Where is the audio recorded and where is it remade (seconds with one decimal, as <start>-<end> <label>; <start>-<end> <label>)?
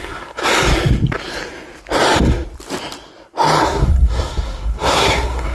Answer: 0.0-0.4 remade; 0.4-3.6 recorded; 3.6-5.5 remade